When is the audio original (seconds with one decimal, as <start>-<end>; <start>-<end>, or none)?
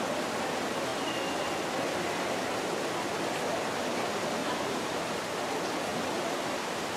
0.0-4.4; 5.2-7.0